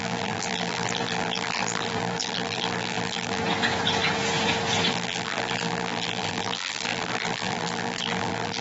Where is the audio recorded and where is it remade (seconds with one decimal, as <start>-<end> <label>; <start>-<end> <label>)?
0.0-3.4 remade; 3.4-4.9 recorded; 4.9-8.6 remade